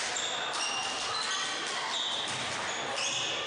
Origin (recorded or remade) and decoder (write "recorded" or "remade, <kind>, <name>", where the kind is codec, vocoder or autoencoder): recorded